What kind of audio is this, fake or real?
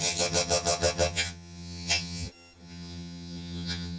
fake